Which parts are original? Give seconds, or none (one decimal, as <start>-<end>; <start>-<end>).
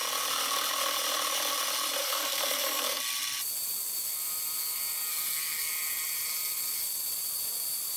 0.0-2.0; 3.0-5.1; 5.7-8.0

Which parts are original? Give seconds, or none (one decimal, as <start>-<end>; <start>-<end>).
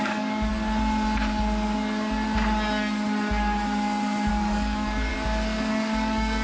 0.5-4.3; 5.1-5.7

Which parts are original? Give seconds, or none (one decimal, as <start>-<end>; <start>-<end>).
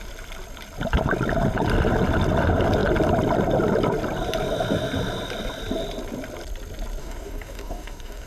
0.0-7.0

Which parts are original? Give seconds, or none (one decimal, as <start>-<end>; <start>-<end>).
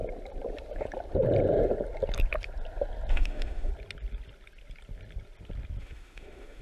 0.0-3.1; 3.7-5.8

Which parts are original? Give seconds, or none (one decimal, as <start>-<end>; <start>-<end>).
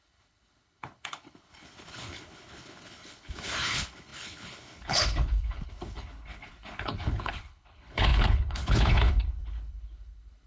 none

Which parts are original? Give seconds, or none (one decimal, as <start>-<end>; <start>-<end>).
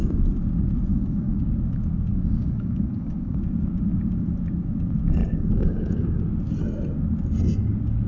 0.0-0.9; 1.4-2.1; 3.4-5.2; 6.2-8.1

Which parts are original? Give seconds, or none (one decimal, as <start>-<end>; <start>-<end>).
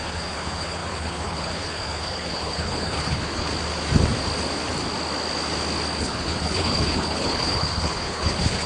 3.5-6.0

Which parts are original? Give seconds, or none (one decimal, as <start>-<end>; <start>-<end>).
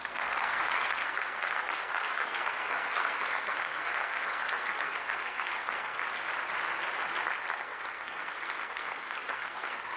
6.0-7.6